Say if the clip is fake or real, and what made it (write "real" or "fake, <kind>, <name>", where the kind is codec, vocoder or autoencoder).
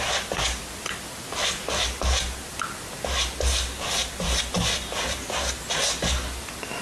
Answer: real